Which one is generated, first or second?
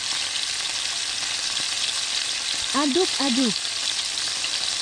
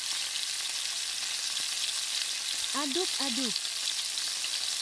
first